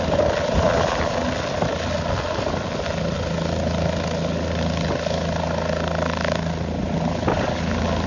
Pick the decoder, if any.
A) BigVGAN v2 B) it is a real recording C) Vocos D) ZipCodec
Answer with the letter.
B